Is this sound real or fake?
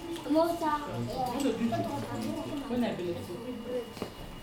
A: real